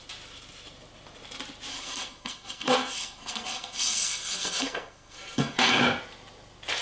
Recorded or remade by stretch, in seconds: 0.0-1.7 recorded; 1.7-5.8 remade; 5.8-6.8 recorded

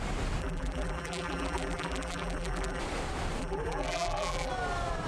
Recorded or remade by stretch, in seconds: 0.0-0.4 recorded; 0.4-2.8 remade; 2.8-3.4 recorded; 3.4-4.5 remade; 4.5-5.1 recorded